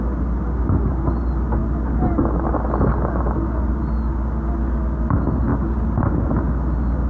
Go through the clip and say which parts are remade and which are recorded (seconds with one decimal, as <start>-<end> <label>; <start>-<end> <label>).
0.0-7.1 recorded